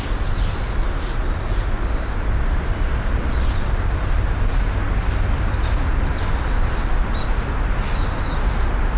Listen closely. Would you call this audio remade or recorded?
recorded